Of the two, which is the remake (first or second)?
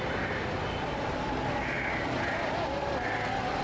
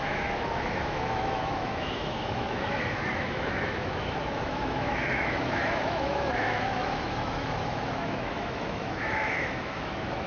second